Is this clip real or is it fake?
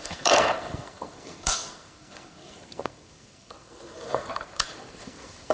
fake